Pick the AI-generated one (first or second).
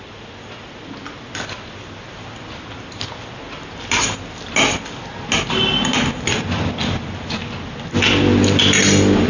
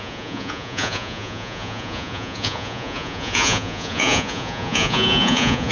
second